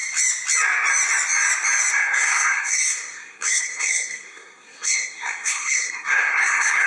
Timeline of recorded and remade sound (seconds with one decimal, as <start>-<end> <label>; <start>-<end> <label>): 0.0-1.9 recorded; 1.9-6.9 remade